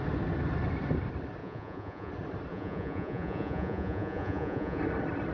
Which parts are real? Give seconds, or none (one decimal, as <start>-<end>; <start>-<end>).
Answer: 0.0-1.4; 2.1-2.5; 4.8-5.3